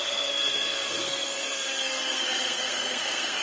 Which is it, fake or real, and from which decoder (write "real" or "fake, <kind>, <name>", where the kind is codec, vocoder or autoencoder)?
fake, codec, SNAC